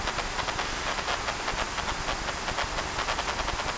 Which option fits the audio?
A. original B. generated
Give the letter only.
A